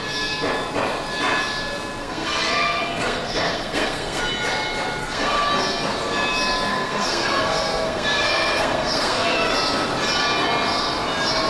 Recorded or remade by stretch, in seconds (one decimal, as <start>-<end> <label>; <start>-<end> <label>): 0.0-2.0 recorded; 2.0-4.2 remade; 4.2-5.0 recorded; 5.0-5.5 remade; 5.5-6.7 recorded; 6.7-9.5 remade; 9.5-11.5 recorded